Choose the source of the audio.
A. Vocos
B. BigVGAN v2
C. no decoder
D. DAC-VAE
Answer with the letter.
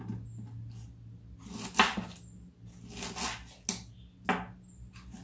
C